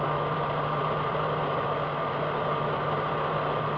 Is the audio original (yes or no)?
yes